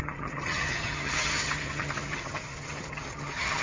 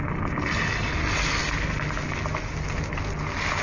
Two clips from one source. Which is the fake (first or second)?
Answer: first